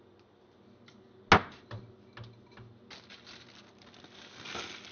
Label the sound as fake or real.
real